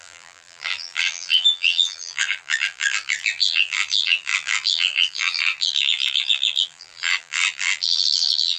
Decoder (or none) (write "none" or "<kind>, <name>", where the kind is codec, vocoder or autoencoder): vocoder, BigVGAN v2